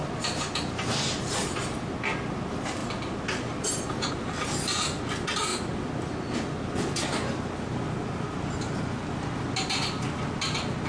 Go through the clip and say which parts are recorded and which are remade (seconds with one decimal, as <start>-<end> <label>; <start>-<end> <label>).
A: 0.0-10.9 recorded